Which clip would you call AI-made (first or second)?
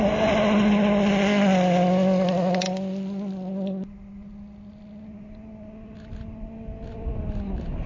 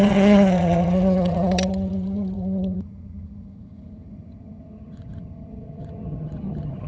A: second